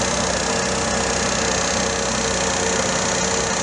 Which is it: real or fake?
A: real